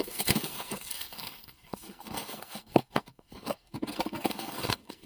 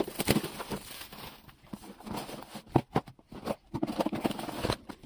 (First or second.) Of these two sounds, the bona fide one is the second